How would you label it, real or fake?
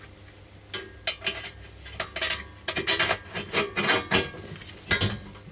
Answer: real